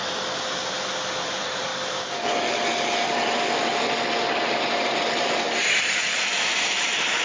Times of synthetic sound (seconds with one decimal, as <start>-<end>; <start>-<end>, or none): 1.2-1.7; 5.8-7.2